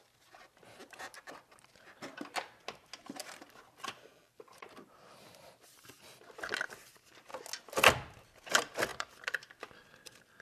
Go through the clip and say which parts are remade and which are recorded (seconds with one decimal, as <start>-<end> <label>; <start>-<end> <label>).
0.0-3.2 recorded; 3.2-6.7 remade; 6.7-8.9 recorded; 8.9-10.4 remade